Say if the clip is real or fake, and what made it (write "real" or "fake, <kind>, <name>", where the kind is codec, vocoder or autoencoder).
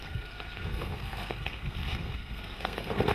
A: fake, codec, SNAC